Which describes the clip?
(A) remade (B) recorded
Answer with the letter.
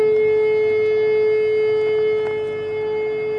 B